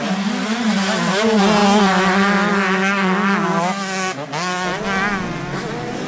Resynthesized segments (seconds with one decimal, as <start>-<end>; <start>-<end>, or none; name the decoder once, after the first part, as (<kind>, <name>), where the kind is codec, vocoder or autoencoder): none